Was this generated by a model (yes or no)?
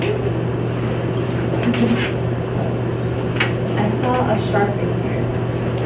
no